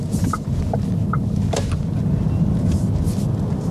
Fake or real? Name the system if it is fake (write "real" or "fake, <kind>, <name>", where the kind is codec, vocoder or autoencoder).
real